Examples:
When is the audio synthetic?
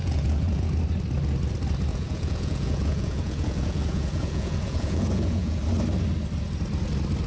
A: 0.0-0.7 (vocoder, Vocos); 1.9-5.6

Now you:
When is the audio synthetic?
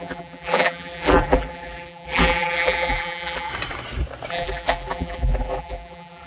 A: 0.0-3.5 (vocoder, BigVGAN v2); 4.3-6.3